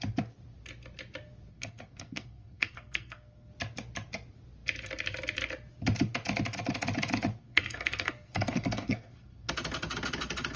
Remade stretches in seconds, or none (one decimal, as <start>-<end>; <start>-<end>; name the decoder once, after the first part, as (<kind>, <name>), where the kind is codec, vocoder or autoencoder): 1.5-3.5 (codec, SNAC); 7.4-9.5